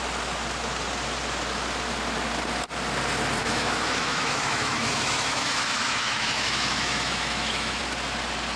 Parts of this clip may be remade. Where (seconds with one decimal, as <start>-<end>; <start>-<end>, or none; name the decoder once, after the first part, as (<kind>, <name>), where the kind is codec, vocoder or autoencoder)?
3.4-7.8 (autoencoder, DAC-VAE)